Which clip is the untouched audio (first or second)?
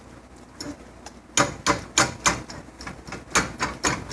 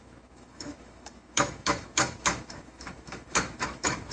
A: first